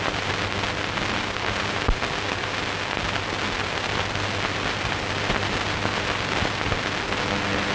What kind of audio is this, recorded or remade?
recorded